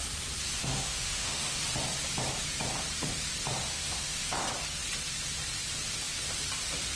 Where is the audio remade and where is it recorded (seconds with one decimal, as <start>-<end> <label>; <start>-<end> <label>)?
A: 0.0-0.6 recorded; 0.6-1.6 remade; 1.6-3.7 recorded; 3.7-4.3 remade; 4.3-7.0 recorded